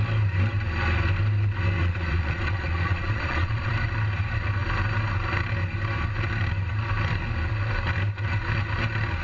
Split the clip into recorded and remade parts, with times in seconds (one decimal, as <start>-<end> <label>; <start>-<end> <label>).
0.0-1.8 recorded; 1.8-3.7 remade; 3.7-9.2 recorded